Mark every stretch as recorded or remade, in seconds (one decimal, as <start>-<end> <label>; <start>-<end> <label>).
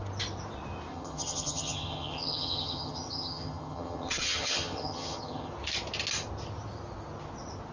0.0-0.9 recorded; 0.9-5.5 remade; 5.5-7.7 recorded